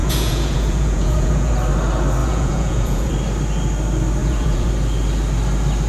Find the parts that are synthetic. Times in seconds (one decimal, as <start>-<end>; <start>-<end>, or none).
0.0-1.5; 2.2-3.1; 4.2-4.7

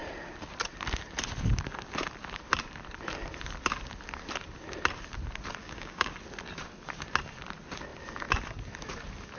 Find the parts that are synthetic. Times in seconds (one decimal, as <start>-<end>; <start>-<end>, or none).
5.6-6.1

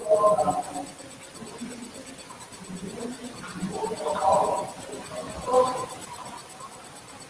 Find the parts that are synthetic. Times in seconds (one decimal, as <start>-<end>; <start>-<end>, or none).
2.3-7.3

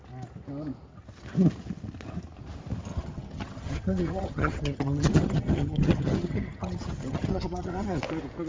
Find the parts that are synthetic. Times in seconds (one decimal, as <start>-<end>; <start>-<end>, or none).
2.9-8.0

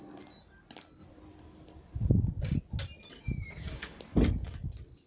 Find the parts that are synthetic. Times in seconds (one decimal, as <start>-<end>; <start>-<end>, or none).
3.2-3.8

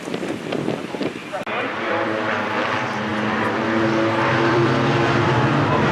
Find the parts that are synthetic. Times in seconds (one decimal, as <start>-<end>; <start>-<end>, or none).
0.0-1.2; 1.8-3.1; 4.3-5.9

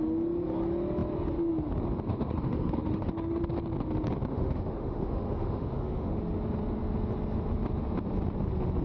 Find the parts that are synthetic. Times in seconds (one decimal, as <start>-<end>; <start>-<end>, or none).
2.1-3.4; 4.3-6.2